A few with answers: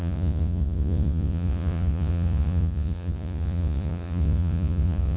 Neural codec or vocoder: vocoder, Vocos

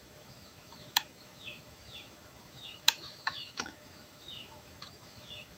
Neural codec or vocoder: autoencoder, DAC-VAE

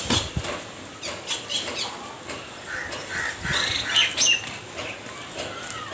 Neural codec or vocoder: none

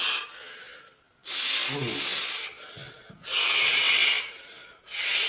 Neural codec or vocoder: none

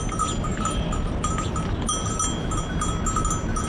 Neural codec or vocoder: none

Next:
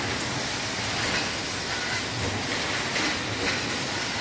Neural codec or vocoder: none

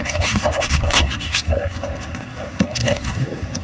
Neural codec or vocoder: codec, SNAC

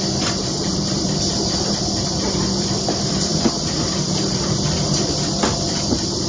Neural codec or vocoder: vocoder, BigVGAN v2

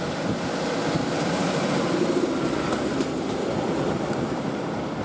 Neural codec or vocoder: vocoder, BigVGAN v2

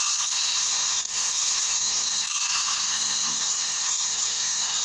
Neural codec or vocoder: codec, SNAC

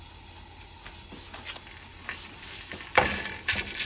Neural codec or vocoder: none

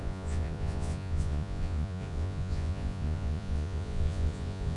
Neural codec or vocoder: vocoder, Vocos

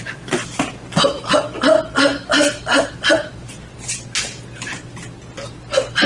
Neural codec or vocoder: none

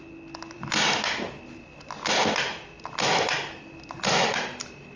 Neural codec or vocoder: none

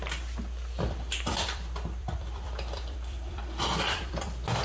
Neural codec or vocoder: vocoder, BigVGAN v2